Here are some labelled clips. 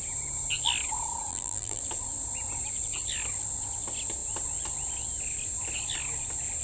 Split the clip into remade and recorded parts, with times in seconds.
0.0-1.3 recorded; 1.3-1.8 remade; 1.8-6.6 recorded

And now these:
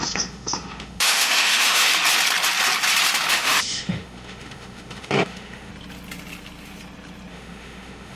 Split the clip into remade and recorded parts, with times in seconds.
0.0-1.9 remade; 1.9-3.3 recorded; 3.3-5.7 remade; 5.7-7.3 recorded; 7.3-8.2 remade

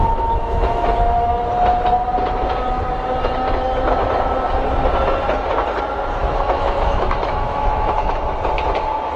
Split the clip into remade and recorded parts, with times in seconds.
0.0-1.5 remade; 1.5-6.2 recorded; 6.2-8.2 remade; 8.2-9.2 recorded

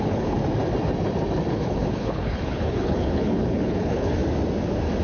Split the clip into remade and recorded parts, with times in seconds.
0.0-0.4 remade; 0.4-1.5 recorded; 1.5-4.2 remade; 4.2-5.0 recorded

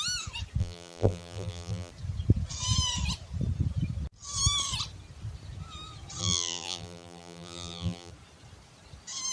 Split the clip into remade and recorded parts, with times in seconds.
0.0-0.6 recorded; 0.6-1.9 remade; 1.9-6.2 recorded; 6.2-8.1 remade; 8.1-9.3 recorded